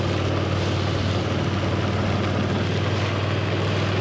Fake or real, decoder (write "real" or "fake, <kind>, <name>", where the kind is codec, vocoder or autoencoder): real